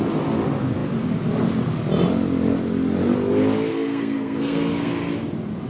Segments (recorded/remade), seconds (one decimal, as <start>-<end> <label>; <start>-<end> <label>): 0.0-3.7 recorded; 3.7-4.9 remade; 4.9-5.7 recorded